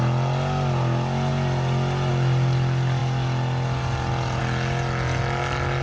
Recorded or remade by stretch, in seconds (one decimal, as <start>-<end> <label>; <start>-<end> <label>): 0.0-5.8 recorded